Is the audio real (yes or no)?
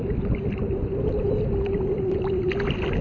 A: yes